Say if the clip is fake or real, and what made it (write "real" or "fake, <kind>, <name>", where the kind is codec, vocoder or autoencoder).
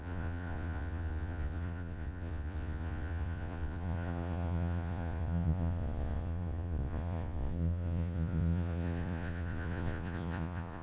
fake, vocoder, Vocos